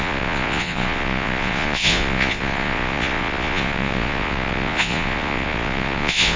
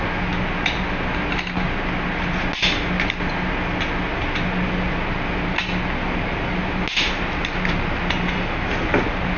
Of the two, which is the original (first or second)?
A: second